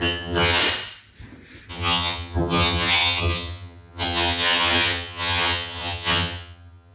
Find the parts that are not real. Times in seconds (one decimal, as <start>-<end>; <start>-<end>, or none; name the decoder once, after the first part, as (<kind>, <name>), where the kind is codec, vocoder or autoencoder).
0.0-0.6 (vocoder, HiFi-GAN); 1.7-6.9